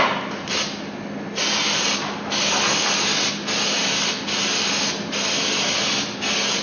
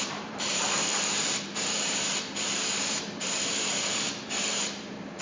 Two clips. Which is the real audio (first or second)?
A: first